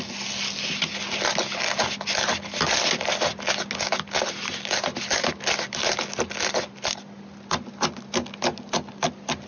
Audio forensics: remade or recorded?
recorded